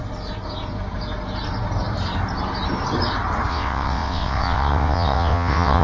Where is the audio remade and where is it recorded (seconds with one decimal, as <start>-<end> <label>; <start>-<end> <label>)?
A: 0.0-3.5 recorded; 3.5-5.8 remade